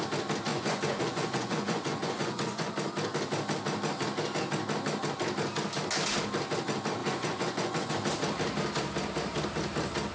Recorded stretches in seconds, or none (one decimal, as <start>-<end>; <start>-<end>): 0.0-0.5; 2.7-7.0; 7.9-10.1